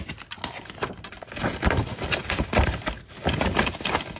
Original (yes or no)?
yes